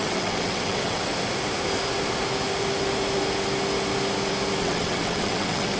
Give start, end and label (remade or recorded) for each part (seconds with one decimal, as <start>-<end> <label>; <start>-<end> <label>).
0.0-1.1 remade; 1.1-4.6 recorded; 4.6-5.8 remade